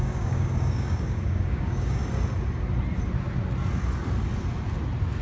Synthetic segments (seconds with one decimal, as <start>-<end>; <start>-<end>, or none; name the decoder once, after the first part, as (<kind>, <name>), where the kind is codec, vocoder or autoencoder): 0.0-2.0 (codec, DAC)